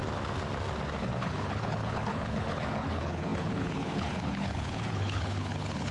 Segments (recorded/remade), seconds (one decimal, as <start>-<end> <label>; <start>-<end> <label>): 0.0-1.0 recorded; 1.0-5.9 remade

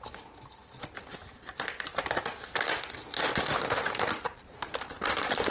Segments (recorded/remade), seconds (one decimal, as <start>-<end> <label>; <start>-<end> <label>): 0.0-0.6 remade; 0.6-3.7 recorded; 3.7-5.5 remade

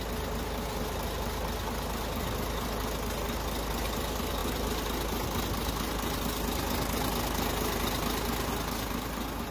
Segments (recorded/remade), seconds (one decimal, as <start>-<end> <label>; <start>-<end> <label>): 0.0-9.5 recorded

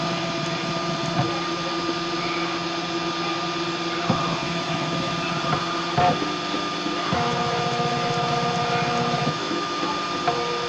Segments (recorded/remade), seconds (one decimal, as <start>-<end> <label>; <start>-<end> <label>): 0.0-4.4 recorded; 4.4-5.1 remade; 5.1-7.0 recorded; 7.0-7.9 remade; 7.9-9.2 recorded; 9.2-9.9 remade; 9.9-10.7 recorded